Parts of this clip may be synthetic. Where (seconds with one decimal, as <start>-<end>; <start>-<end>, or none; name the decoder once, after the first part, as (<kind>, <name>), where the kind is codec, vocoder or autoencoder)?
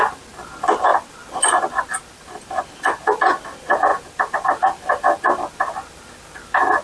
none